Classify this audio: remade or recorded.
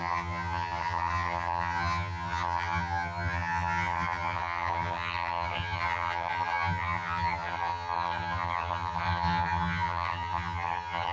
remade